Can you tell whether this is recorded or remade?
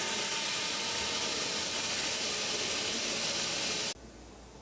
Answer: recorded